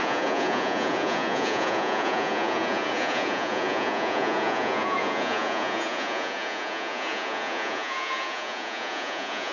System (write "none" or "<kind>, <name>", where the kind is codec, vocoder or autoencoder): vocoder, Vocos